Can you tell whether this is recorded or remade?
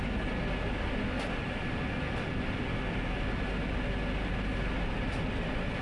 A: recorded